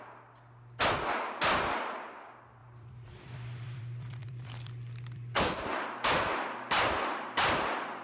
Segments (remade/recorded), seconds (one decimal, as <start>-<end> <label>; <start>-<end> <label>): 0.0-2.6 recorded; 2.6-6.1 remade; 6.1-8.0 recorded